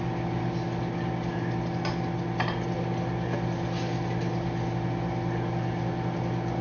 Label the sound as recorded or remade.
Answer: recorded